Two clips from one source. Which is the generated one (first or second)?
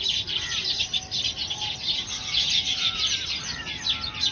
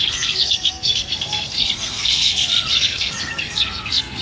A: second